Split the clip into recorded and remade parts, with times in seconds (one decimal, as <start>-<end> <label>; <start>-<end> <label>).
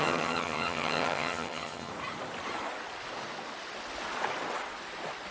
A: 0.0-1.9 remade; 1.9-5.3 recorded